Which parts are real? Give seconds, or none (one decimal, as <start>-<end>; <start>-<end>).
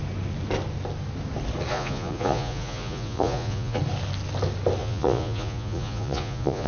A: 0.0-1.7; 3.8-4.8